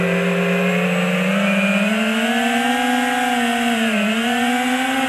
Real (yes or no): yes